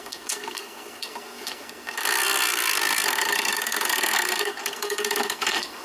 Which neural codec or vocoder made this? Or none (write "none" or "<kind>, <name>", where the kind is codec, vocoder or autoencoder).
codec, SNAC